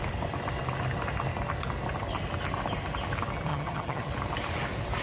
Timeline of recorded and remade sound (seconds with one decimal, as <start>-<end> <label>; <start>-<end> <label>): 0.0-3.5 recorded; 3.5-4.1 remade; 4.1-5.0 recorded